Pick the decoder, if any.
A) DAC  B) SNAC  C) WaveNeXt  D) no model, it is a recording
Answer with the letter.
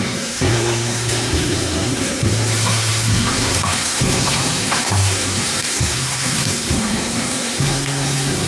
B